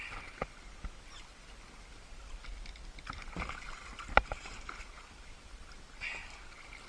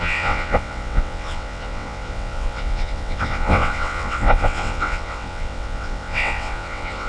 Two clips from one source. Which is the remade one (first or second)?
second